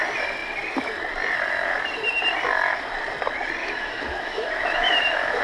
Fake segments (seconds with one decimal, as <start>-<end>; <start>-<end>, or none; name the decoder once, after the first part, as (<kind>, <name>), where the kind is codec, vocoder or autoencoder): 3.6-5.4 (autoencoder, DAC-VAE)